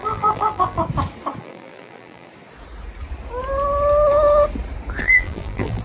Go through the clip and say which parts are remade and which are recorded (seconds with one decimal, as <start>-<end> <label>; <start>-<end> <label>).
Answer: 0.0-0.8 remade; 0.8-1.4 recorded; 1.4-2.3 remade; 2.3-5.0 recorded; 5.0-5.8 remade